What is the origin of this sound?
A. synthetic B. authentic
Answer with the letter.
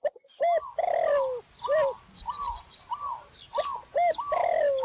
B